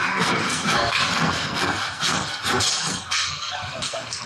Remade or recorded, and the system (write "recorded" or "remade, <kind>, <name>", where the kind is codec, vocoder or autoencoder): remade, codec, SNAC